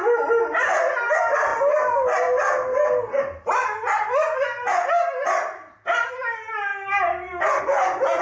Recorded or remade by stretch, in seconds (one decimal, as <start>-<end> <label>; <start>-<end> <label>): 0.0-8.2 recorded